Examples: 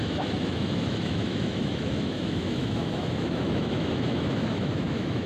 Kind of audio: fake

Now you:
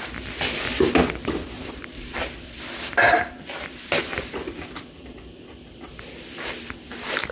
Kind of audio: fake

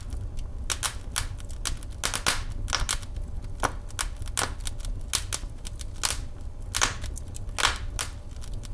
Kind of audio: real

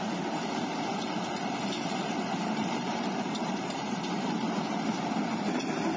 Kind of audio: fake